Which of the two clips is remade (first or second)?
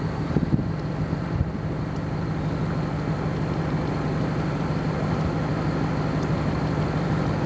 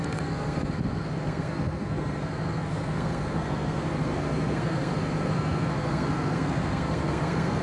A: second